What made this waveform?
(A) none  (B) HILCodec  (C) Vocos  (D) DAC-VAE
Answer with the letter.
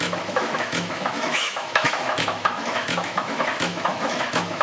D